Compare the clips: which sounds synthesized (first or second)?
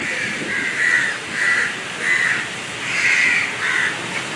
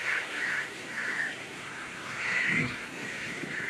second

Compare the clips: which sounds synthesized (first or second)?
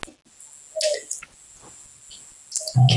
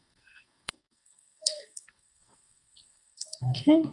second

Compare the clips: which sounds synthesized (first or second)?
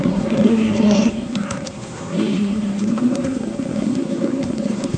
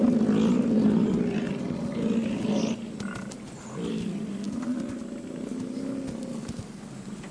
first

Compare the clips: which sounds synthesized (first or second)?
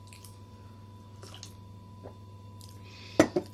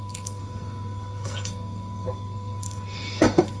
second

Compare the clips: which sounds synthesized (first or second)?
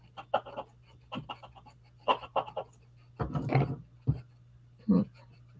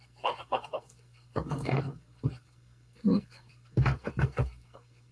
second